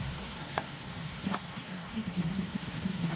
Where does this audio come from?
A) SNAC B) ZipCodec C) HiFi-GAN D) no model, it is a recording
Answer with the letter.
A